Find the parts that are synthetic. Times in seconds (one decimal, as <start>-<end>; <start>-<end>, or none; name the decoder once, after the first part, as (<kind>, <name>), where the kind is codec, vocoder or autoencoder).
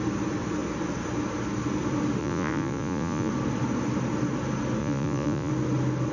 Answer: 2.2-3.3 (vocoder, Vocos); 4.8-5.5